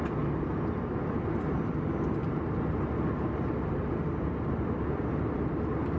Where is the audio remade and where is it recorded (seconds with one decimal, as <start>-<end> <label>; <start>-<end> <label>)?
0.0-6.0 recorded